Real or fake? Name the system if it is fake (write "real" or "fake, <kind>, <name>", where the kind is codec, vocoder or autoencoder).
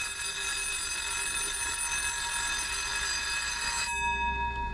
real